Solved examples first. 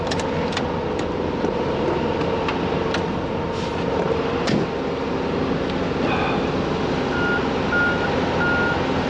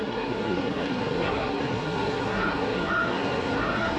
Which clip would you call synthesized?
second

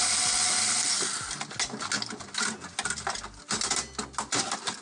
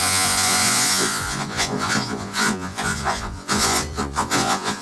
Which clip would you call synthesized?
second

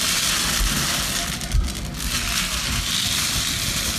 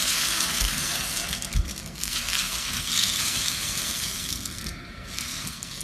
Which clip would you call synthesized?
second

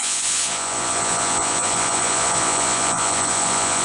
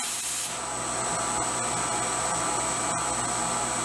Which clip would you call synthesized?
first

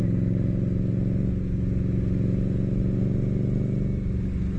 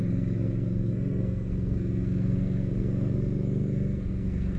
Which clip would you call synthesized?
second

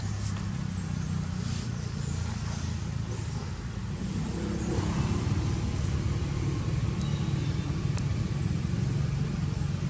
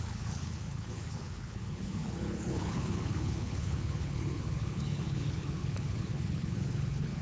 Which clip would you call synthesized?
second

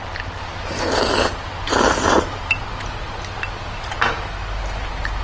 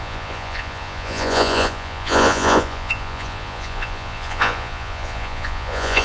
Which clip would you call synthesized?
second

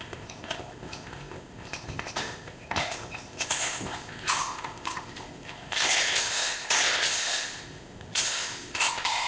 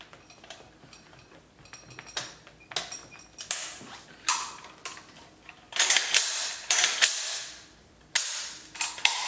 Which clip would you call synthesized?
first